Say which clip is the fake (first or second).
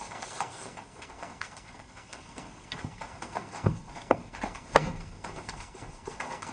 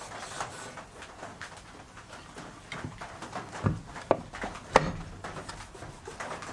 first